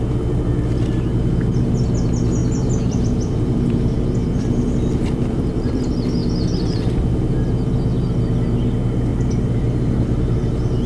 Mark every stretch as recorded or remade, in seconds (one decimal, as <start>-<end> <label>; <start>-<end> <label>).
0.0-2.4 recorded; 2.4-5.8 remade; 5.8-9.1 recorded; 9.1-10.5 remade; 10.5-10.9 recorded